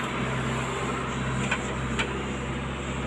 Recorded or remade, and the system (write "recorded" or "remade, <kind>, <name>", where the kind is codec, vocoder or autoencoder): recorded